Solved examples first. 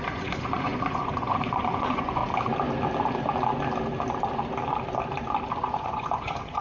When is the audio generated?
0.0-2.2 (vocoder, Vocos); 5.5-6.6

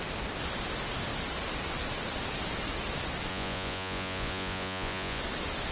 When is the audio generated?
3.3-5.2 (vocoder, Vocos)